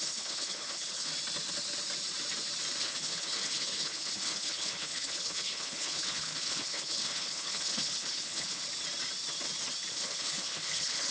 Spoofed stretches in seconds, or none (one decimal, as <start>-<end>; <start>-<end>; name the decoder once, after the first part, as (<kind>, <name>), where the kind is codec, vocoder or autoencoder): 0.0-1.1 (codec, HILCodec); 2.8-8.6; 9.9-11.1